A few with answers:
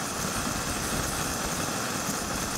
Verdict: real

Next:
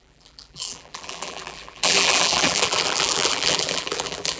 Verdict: fake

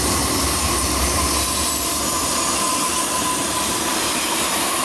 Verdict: fake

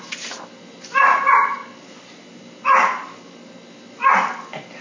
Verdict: real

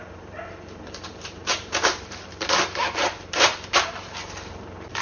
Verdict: fake